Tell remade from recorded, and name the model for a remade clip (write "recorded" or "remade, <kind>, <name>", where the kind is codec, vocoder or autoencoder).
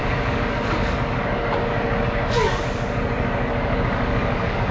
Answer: remade, codec, DAC